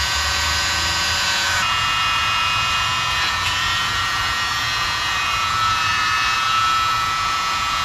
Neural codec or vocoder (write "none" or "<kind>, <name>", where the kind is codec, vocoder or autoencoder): vocoder, Vocos